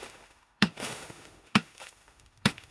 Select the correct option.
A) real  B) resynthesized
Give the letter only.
B